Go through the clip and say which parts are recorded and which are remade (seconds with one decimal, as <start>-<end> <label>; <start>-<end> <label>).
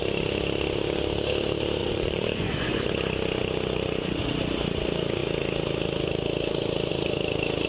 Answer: 0.0-1.8 recorded; 1.8-2.9 remade; 2.9-7.7 recorded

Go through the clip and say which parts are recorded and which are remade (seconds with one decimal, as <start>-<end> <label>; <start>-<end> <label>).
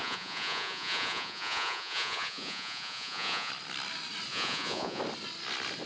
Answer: 0.0-3.5 remade; 3.5-4.3 recorded; 4.3-5.0 remade; 5.0-5.9 recorded